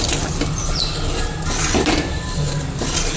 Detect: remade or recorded recorded